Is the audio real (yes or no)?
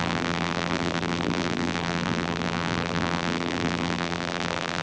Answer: no